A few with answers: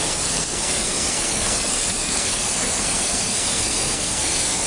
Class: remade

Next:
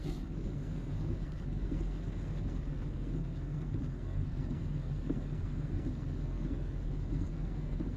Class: remade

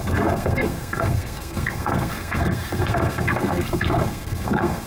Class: remade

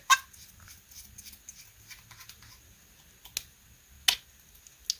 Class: recorded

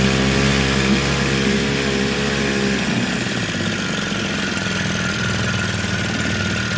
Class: recorded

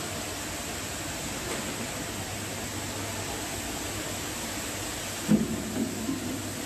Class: recorded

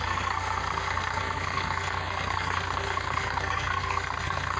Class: remade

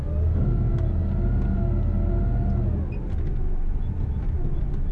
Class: recorded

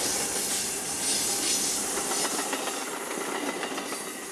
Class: recorded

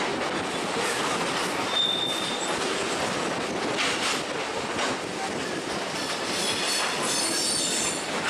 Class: recorded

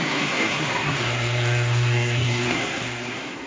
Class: remade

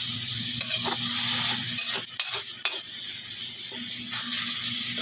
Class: recorded